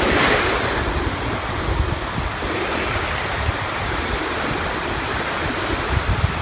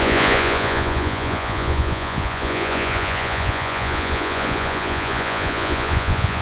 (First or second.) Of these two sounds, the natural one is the first